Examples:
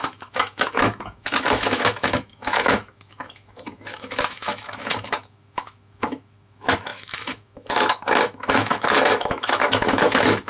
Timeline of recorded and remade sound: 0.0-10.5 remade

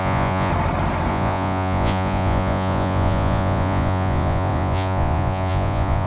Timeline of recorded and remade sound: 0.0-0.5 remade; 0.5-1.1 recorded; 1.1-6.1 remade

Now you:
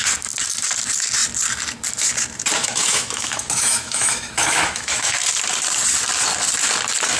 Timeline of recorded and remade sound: 0.0-2.6 recorded; 2.6-5.2 remade; 5.2-7.2 recorded

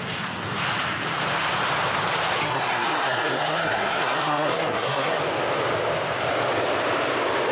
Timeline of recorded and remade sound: 0.0-2.4 recorded; 2.4-5.2 remade; 5.2-7.5 recorded

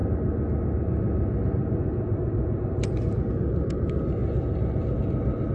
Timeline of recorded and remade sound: 0.0-5.5 recorded

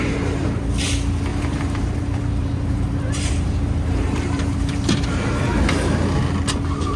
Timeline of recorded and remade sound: 0.0-1.3 recorded; 1.3-5.3 remade; 5.3-7.0 recorded

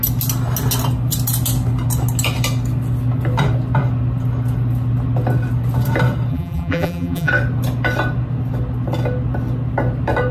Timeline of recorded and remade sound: 0.0-6.3 recorded; 6.3-7.3 remade; 7.3-10.3 recorded

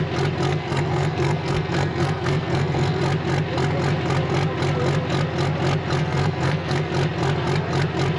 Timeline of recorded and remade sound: 0.0-0.5 recorded; 0.5-3.0 remade; 3.0-6.0 recorded; 6.0-6.9 remade; 6.9-8.2 recorded